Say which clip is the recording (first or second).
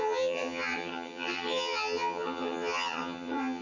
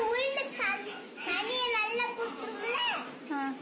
second